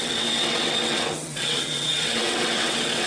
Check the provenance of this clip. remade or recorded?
remade